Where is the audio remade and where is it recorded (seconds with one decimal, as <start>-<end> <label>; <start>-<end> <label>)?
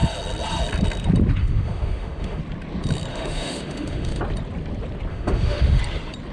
0.0-1.4 recorded; 1.4-2.4 remade; 2.4-3.1 recorded; 3.1-4.2 remade; 4.2-5.1 recorded; 5.1-5.8 remade; 5.8-6.3 recorded